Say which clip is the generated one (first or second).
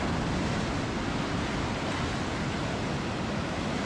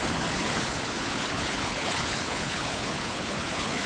second